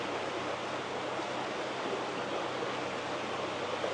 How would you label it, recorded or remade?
recorded